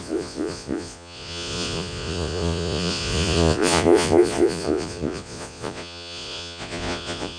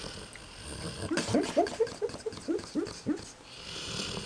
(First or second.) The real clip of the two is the second